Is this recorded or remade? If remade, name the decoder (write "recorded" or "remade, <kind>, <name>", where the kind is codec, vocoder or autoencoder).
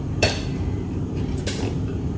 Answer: remade, vocoder, BigVGAN v2